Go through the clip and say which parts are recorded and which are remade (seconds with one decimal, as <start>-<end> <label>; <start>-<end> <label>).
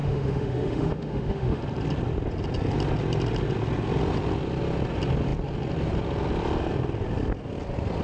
0.0-1.6 remade; 1.6-8.0 recorded